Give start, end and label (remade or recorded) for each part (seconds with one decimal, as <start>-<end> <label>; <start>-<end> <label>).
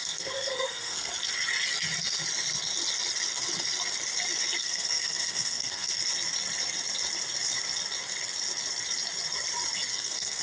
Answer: 0.0-1.1 remade; 1.1-4.6 recorded; 4.6-5.9 remade; 5.9-9.9 recorded; 9.9-10.4 remade